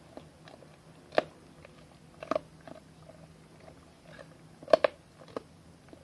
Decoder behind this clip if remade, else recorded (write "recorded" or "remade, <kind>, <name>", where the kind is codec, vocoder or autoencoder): recorded